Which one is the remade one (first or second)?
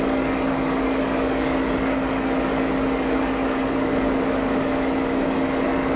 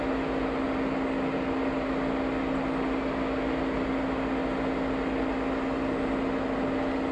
first